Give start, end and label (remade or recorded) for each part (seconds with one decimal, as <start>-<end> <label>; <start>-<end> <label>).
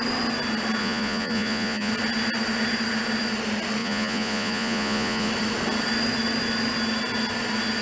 0.0-0.8 recorded; 0.8-1.9 remade; 1.9-3.8 recorded; 3.8-5.3 remade; 5.3-7.8 recorded